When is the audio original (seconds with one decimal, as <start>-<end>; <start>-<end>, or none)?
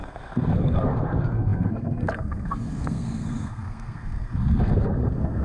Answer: none